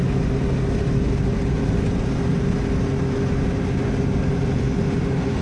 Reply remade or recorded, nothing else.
recorded